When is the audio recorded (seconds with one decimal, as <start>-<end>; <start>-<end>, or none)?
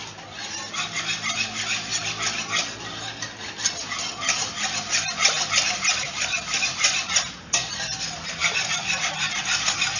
1.0-10.0